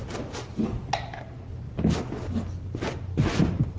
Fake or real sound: real